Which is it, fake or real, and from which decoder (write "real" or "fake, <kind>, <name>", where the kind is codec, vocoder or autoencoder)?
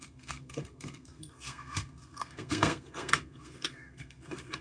fake, codec, SNAC